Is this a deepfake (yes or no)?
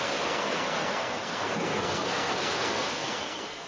yes